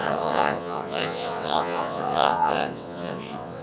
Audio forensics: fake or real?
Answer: fake